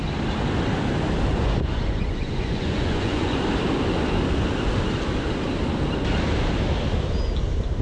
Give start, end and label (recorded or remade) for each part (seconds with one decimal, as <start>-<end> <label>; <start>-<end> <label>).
0.0-1.3 recorded; 1.3-3.4 remade; 3.4-7.8 recorded